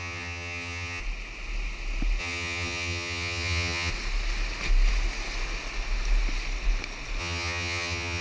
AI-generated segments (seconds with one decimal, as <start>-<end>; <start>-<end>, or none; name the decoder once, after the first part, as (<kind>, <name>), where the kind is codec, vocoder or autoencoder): 0.0-1.0 (vocoder, HiFi-GAN); 2.2-3.9; 7.2-8.2